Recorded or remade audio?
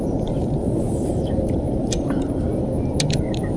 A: remade